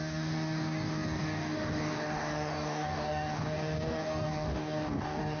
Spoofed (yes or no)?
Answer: yes